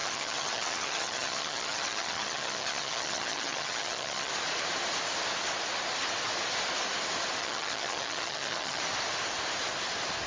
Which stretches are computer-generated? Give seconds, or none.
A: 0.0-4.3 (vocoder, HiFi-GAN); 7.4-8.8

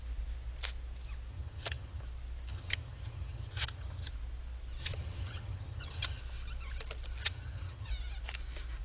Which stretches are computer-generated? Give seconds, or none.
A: 1.3-2.0 (vocoder, HiFi-GAN); 2.5-4.1; 4.8-6.2; 7.2-7.9

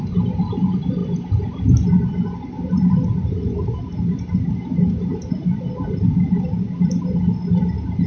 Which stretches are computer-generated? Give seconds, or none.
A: none

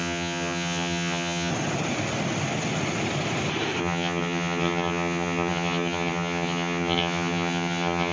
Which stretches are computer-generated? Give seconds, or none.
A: 0.0-1.5 (vocoder, HiFi-GAN); 3.8-8.1

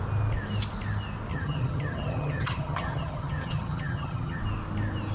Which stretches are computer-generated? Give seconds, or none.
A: 1.3-4.4 (vocoder, HiFi-GAN)

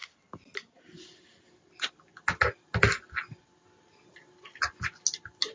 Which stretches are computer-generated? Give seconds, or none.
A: none

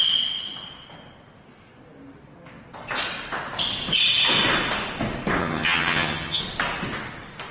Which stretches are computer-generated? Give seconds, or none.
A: 5.4-6.4 (vocoder, HiFi-GAN)